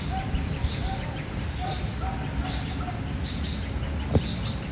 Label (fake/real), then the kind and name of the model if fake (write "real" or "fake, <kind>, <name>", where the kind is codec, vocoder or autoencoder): real